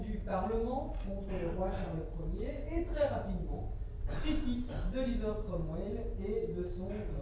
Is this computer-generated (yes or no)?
no